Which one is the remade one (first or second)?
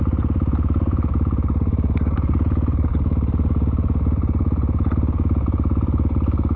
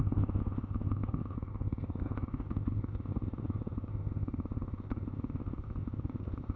second